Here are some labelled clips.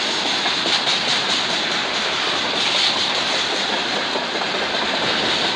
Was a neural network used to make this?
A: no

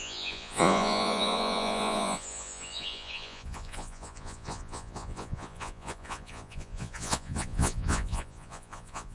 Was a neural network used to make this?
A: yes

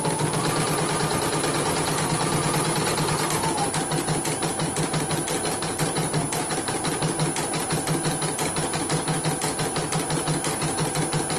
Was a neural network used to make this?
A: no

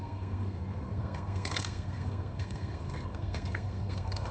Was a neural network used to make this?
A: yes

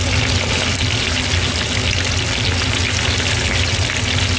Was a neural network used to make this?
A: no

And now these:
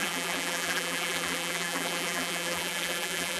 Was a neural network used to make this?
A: yes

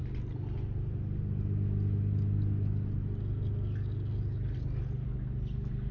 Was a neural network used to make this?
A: no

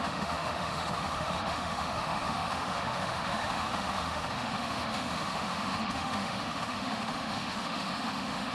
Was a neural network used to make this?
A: yes